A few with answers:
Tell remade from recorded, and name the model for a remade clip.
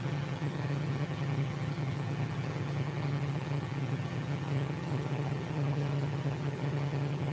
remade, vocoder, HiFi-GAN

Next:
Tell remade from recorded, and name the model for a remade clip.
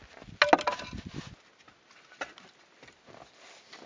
recorded